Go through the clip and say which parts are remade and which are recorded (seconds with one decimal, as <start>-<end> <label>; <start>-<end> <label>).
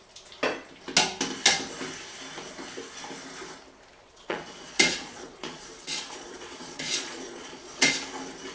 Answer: 0.0-4.0 recorded; 4.0-7.9 remade; 7.9-8.5 recorded